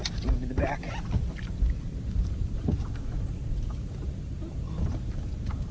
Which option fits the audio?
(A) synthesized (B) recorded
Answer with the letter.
B